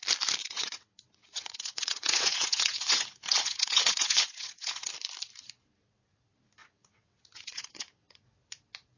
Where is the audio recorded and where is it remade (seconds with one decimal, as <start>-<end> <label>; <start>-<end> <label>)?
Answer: 0.0-0.4 recorded; 0.4-4.9 remade; 4.9-6.6 recorded; 6.6-8.2 remade; 8.2-9.0 recorded